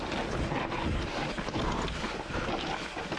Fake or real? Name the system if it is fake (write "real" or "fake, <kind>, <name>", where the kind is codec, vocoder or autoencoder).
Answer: real